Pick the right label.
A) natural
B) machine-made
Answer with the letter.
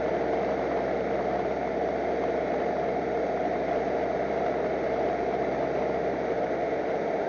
A